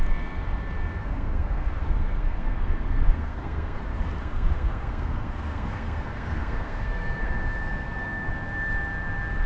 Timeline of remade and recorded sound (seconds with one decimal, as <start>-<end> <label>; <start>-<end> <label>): 0.0-1.0 recorded; 1.0-3.8 remade; 3.8-4.2 recorded; 4.2-8.3 remade; 8.3-9.5 recorded